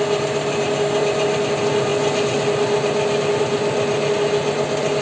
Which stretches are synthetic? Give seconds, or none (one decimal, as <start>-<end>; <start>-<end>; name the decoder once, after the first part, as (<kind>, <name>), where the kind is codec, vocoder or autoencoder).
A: none